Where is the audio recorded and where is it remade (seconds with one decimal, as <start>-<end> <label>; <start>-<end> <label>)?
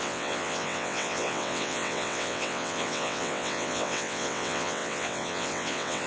0.0-6.1 remade